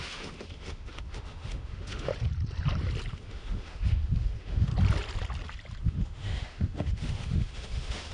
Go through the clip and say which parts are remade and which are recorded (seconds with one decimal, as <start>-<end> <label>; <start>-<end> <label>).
0.0-2.1 remade; 2.1-3.1 recorded; 3.1-4.7 remade; 4.7-5.8 recorded; 5.8-8.1 remade